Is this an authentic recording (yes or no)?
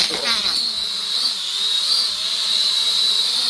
no